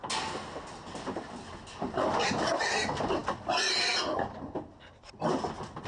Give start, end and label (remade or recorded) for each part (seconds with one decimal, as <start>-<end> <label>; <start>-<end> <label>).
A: 0.0-5.9 recorded